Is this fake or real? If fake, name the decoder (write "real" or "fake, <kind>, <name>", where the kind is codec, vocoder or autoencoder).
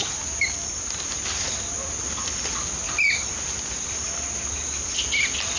real